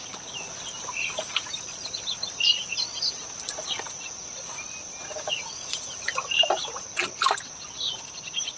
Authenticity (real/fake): real